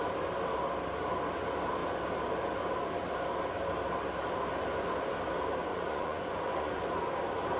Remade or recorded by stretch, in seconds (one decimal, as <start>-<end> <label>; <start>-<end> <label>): 0.0-5.7 recorded; 5.7-6.8 remade; 6.8-7.6 recorded